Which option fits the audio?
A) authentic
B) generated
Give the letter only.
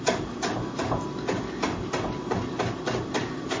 A